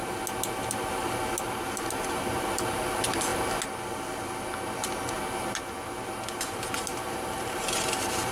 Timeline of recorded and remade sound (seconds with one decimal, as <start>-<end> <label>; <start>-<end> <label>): 0.0-1.4 recorded; 1.4-3.3 remade; 3.3-6.3 recorded; 6.3-8.3 remade